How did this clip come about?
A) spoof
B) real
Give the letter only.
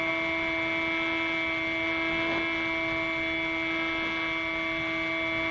B